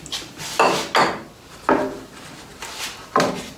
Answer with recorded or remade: recorded